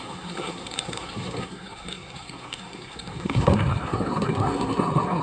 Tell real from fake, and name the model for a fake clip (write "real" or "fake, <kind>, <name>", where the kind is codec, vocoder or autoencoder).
fake, codec, SNAC